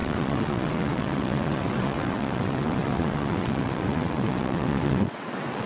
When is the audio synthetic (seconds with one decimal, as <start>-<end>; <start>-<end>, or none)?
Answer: 0.0-5.7